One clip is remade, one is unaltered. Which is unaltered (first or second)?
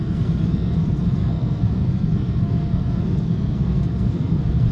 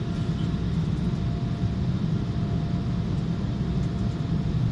second